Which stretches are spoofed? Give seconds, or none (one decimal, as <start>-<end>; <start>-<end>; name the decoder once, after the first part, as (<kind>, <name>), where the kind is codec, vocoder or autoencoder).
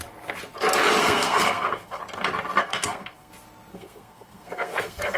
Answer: 1.0-2.0 (codec, SNAC); 2.6-3.3; 3.7-5.2